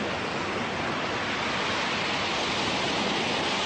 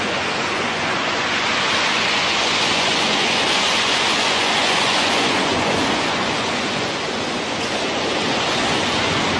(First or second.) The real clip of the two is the first